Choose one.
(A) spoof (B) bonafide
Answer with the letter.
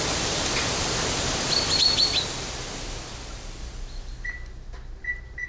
B